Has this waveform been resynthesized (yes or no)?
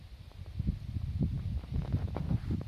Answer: no